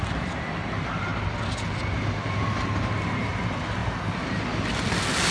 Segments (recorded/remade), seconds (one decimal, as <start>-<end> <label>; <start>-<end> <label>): 0.0-5.3 recorded